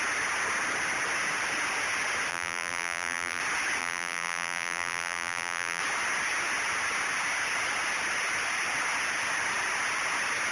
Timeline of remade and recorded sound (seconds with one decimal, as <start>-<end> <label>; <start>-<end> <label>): 0.0-2.3 recorded; 2.3-3.4 remade; 3.4-3.8 recorded; 3.8-5.8 remade; 5.8-10.5 recorded